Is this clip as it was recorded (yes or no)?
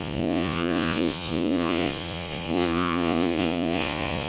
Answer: no